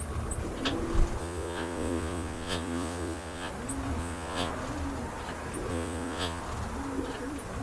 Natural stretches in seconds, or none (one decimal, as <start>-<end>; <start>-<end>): 0.0-1.2; 3.5-4.0; 4.5-5.7; 6.4-7.6